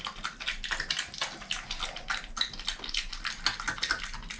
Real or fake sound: real